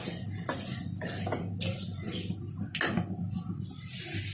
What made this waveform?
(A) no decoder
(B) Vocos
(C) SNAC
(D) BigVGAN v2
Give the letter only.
A